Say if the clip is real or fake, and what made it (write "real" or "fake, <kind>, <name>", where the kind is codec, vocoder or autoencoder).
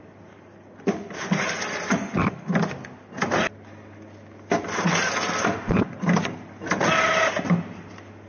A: real